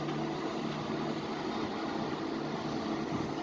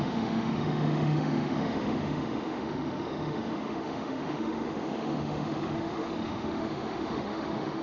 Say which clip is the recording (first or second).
first